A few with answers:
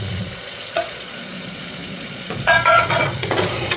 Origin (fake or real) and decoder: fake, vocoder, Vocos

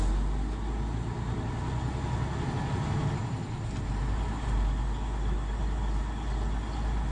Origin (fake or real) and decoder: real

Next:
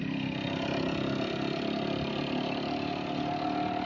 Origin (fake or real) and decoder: real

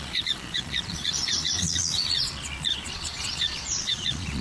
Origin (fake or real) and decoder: fake, vocoder, Vocos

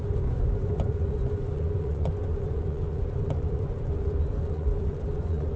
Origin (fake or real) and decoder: fake, vocoder, Vocos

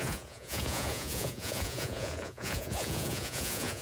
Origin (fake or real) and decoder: fake, vocoder, Vocos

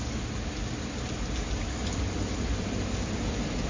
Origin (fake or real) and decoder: real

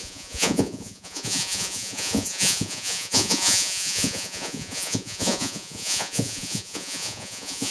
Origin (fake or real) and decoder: fake, vocoder, Vocos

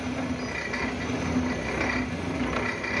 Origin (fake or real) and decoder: real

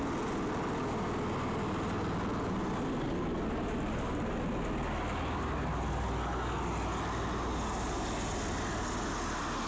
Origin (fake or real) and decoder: real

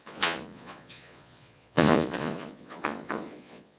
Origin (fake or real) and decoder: fake, vocoder, Vocos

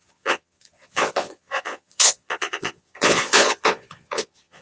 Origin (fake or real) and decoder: fake, vocoder, Vocos